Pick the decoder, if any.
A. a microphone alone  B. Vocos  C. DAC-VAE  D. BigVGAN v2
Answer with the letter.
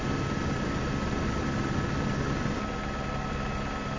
A